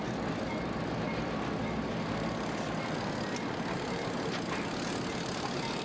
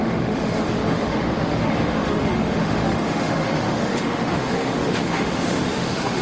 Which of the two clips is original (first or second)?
first